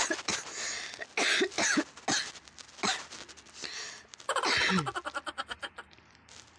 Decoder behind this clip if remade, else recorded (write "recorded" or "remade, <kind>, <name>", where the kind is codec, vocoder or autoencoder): recorded